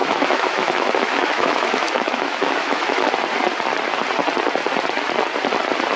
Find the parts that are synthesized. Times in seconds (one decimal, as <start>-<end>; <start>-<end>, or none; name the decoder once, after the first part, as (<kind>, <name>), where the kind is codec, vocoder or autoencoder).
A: 0.0-3.1 (autoencoder, DAC-VAE)

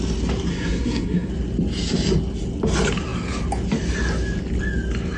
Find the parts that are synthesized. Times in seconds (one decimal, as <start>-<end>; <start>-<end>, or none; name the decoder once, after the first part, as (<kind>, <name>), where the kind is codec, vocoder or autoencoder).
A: 0.5-1.3 (codec, SNAC)